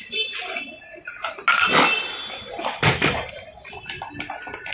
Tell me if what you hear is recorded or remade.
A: recorded